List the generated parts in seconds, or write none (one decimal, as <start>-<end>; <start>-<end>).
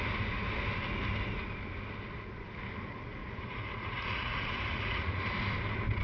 3.2-5.2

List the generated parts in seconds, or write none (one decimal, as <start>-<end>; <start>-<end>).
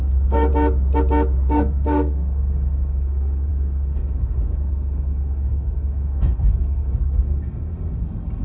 0.0-0.5; 1.5-8.4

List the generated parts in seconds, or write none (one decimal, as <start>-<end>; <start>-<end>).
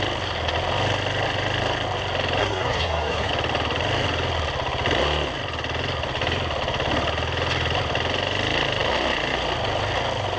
2.4-3.3